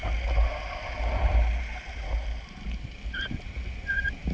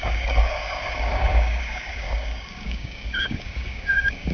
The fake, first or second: second